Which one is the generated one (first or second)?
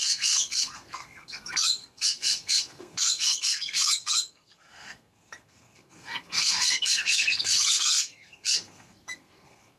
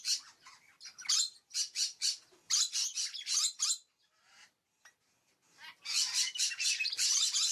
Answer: first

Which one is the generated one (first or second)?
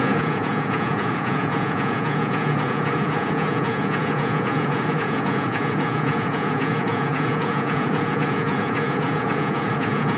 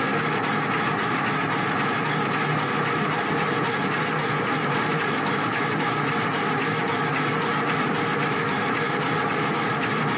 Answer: first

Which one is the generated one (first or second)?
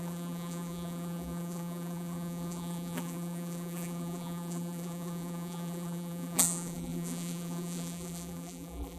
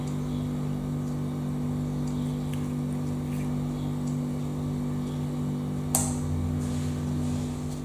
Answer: first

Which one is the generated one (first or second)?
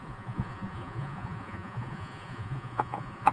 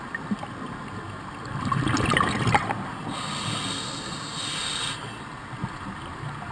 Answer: first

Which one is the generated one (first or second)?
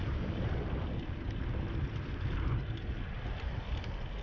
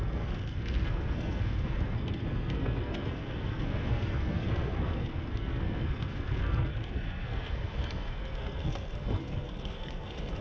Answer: second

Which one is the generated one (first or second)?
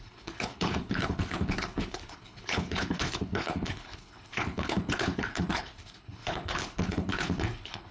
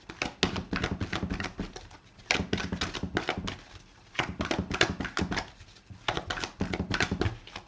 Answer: first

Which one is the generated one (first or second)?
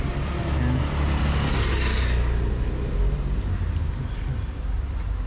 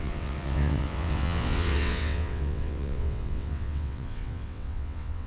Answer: second